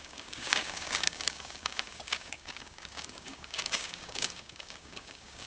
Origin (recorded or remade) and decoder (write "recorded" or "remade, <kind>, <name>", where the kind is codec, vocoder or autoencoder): remade, codec, DAC